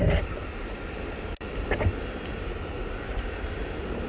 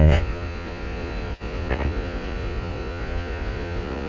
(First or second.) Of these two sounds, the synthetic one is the second